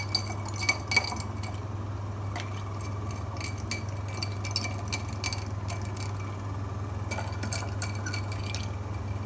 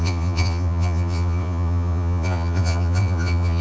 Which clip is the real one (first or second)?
first